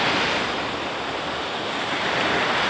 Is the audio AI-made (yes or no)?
no